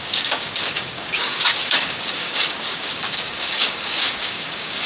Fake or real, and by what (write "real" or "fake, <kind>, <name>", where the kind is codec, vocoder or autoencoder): fake, codec, DAC